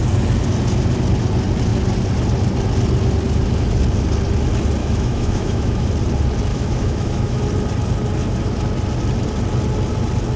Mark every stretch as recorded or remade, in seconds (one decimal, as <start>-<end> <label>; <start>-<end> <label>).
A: 0.0-4.8 recorded; 4.8-5.9 remade; 5.9-6.5 recorded; 6.5-7.4 remade; 7.4-10.4 recorded